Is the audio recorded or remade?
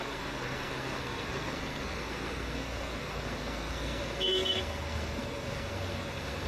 remade